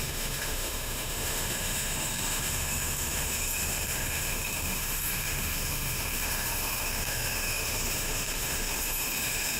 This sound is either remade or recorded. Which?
remade